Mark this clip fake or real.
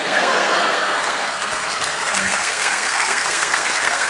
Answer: fake